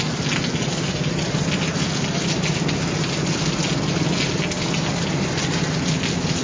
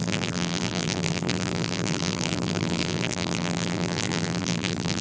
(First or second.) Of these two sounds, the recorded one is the first